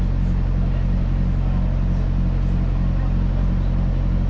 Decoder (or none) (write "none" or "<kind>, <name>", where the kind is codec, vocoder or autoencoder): none